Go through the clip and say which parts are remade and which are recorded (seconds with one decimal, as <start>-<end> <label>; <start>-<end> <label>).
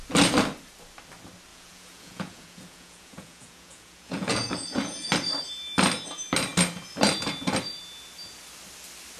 0.0-1.5 recorded; 1.5-5.1 remade; 5.1-9.2 recorded